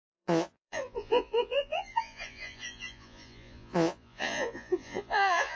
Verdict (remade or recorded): remade